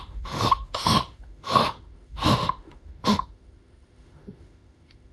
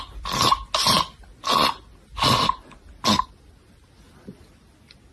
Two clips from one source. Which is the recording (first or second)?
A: second